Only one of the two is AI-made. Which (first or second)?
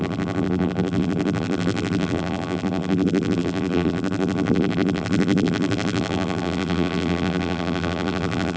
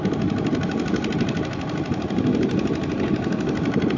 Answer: first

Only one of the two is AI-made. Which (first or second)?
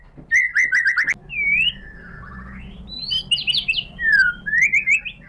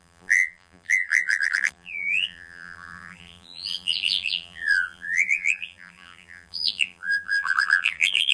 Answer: second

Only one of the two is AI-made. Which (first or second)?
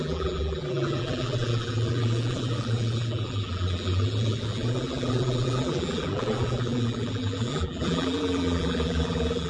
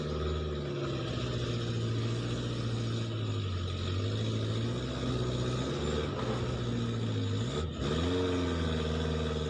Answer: first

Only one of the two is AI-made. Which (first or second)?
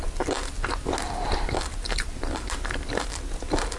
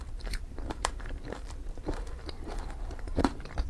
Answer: second